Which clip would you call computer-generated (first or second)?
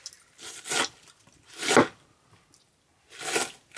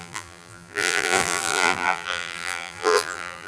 second